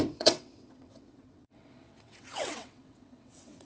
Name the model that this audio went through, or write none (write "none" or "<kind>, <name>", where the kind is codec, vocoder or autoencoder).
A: vocoder, WaveNeXt